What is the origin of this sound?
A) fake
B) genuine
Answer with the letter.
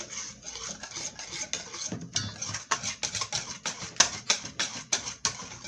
B